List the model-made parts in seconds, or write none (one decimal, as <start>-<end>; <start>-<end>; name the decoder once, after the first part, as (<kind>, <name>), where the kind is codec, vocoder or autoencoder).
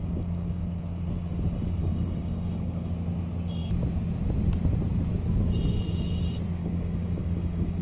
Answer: 0.0-0.6 (codec, DAC); 1.8-2.9; 6.6-7.8